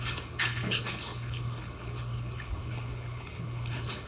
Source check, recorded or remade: remade